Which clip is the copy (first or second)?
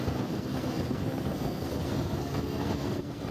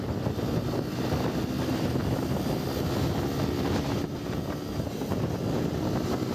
first